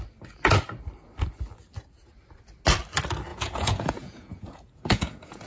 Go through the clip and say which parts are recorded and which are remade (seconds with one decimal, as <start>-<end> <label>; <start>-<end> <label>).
0.0-3.3 recorded; 3.3-5.5 remade